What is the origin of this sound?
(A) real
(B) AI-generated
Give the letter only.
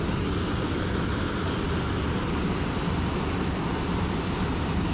A